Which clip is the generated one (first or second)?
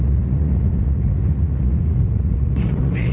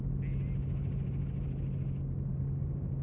first